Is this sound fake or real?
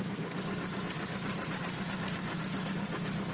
real